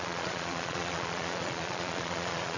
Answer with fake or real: fake